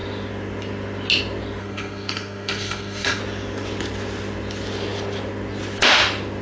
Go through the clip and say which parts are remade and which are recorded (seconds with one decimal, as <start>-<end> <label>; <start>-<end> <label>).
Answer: 0.0-1.6 recorded; 1.6-3.2 remade; 3.2-6.4 recorded